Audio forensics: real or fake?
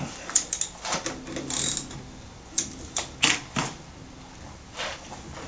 real